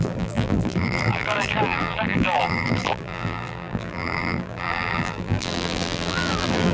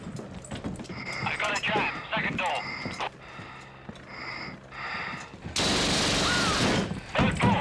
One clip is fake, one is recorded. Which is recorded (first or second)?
second